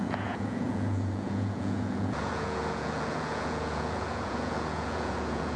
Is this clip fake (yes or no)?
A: yes